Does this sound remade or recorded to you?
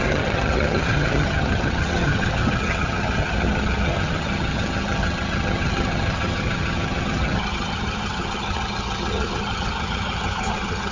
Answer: remade